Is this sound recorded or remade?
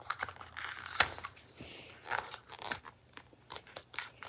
remade